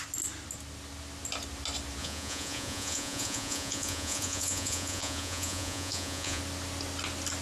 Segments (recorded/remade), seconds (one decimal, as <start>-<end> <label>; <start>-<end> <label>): 0.0-2.0 recorded; 2.0-6.4 remade; 6.4-7.4 recorded